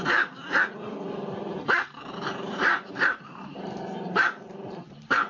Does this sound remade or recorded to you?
remade